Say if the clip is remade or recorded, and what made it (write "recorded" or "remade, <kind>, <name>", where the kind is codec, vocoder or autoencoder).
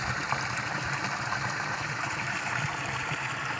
remade, vocoder, BigVGAN v2